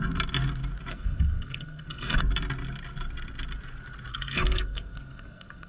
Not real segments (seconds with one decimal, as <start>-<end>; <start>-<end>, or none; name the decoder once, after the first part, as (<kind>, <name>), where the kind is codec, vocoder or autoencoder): 0.9-2.2 (codec, SNAC); 4.1-5.7